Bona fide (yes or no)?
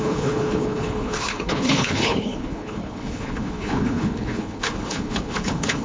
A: no